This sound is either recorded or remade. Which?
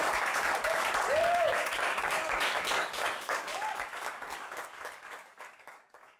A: remade